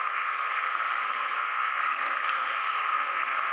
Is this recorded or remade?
remade